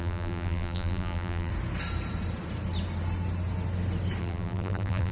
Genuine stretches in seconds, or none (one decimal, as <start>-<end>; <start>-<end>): 1.5-4.2